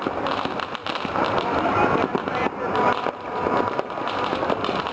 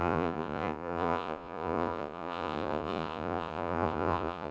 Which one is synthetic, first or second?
second